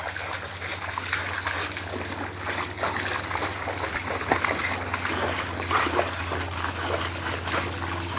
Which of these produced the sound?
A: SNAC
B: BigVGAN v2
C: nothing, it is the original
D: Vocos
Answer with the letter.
C